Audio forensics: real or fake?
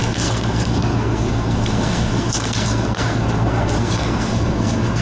fake